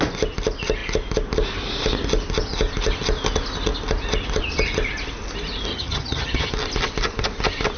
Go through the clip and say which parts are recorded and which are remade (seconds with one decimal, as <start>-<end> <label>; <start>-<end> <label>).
0.0-5.7 recorded; 5.7-6.5 remade; 6.5-7.8 recorded